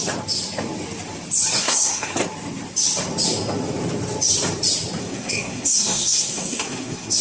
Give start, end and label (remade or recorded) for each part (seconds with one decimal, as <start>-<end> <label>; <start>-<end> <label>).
0.0-1.6 recorded; 1.6-2.1 remade; 2.1-5.0 recorded; 5.0-7.2 remade